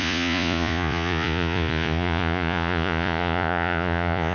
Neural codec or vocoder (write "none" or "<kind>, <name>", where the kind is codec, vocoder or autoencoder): vocoder, Vocos